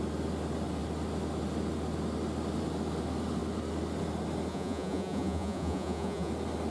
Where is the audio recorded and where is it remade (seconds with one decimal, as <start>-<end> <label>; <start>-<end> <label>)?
0.0-4.5 recorded; 4.5-6.3 remade; 6.3-6.7 recorded